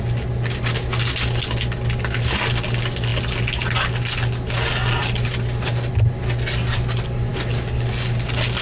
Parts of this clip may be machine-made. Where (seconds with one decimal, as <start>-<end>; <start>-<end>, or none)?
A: none